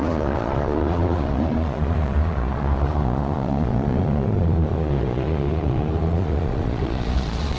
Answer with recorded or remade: remade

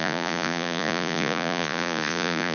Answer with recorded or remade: remade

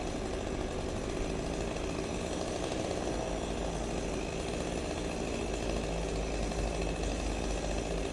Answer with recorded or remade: recorded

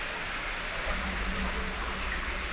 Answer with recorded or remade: recorded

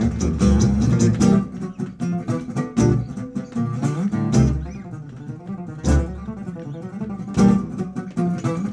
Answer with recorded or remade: recorded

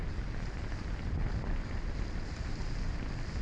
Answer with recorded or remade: recorded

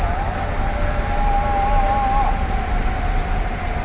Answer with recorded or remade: recorded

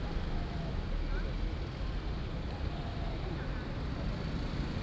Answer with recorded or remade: recorded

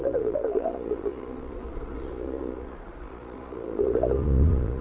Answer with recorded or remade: remade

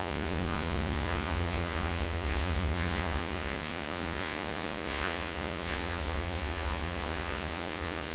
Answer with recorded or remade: remade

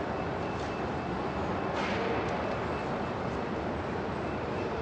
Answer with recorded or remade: recorded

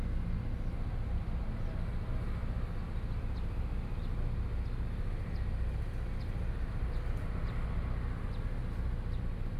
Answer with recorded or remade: recorded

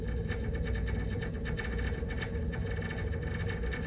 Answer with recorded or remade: recorded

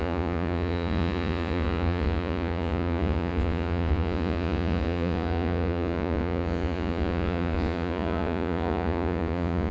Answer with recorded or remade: remade